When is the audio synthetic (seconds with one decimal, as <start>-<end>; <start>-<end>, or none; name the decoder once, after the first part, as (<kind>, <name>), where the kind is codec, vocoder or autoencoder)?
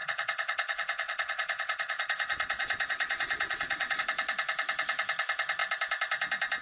0.0-4.0 (vocoder, Vocos)